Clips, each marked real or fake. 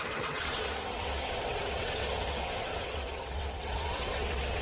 fake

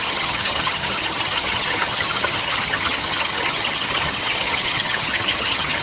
fake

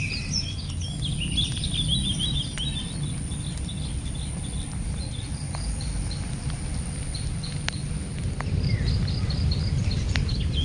real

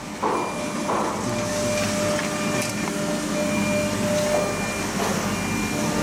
real